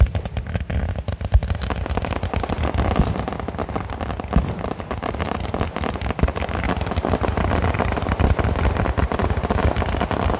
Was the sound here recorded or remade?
recorded